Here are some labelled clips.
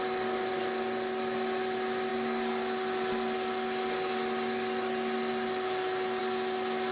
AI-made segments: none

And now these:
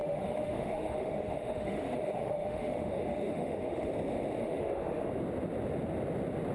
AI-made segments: 0.0-3.9 (autoencoder, DAC-VAE); 4.4-5.1

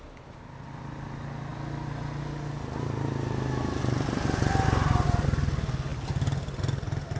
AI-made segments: none

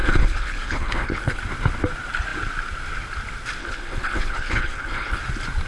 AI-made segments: 0.0-1.4 (codec, HILCodec); 3.6-5.2

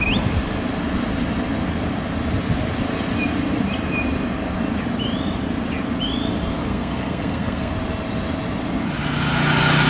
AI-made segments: 6.6-7.7 (codec, SNAC)